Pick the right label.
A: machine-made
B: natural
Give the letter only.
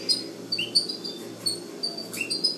B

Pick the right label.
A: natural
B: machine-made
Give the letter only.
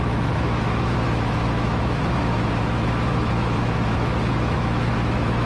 B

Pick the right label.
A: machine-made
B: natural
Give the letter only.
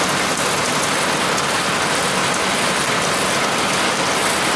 B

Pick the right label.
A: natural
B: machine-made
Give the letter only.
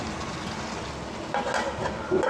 A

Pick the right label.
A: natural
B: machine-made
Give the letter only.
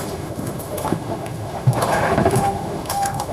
B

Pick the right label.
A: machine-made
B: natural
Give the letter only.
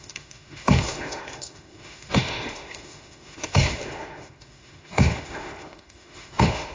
A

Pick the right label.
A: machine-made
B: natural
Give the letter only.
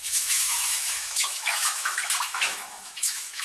A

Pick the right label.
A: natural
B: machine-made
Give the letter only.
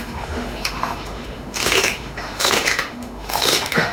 B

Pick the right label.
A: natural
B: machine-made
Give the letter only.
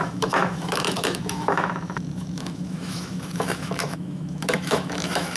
B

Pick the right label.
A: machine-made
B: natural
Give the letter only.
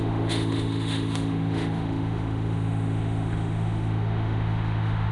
A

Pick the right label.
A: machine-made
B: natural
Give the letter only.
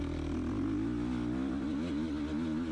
B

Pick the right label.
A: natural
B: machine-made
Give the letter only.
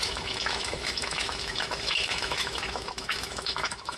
B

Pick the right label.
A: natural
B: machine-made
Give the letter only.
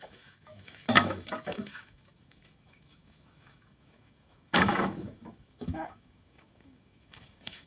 B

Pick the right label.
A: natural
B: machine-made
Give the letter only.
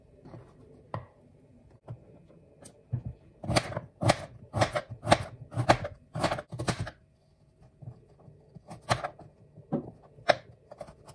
A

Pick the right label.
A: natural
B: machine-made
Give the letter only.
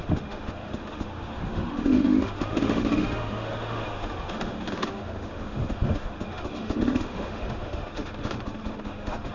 B